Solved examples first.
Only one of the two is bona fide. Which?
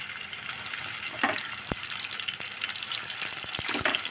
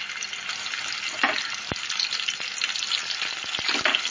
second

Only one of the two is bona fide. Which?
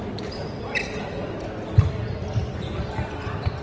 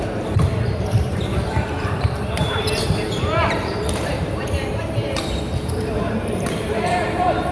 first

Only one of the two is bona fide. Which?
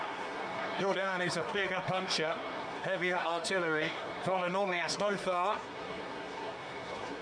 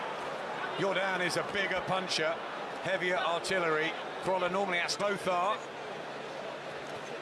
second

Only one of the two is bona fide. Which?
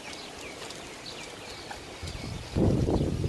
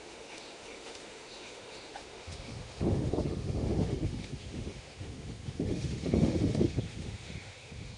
first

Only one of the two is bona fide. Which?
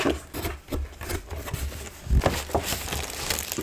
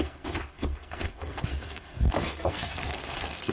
first